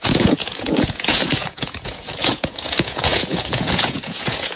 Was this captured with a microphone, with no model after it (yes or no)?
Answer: no